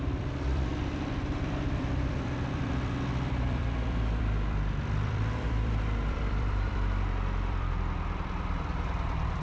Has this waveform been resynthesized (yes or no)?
yes